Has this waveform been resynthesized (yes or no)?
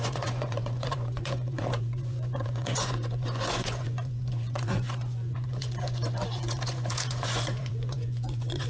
yes